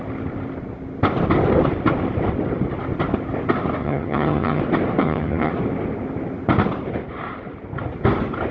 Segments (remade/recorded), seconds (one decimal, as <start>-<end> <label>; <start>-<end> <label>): 0.0-3.8 recorded; 3.8-4.6 remade; 4.6-5.0 recorded; 5.0-5.5 remade; 5.5-8.5 recorded